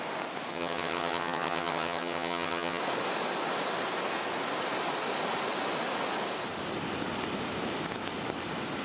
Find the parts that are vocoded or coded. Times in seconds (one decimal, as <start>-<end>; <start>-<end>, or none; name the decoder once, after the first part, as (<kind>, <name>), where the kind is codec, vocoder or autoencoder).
0.5-2.8 (vocoder, HiFi-GAN)